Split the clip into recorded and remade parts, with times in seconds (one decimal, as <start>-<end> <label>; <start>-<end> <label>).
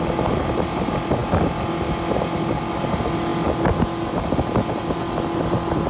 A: 0.0-5.9 recorded